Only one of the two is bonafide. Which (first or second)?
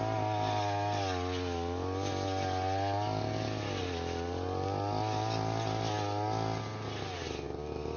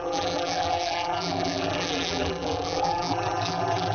first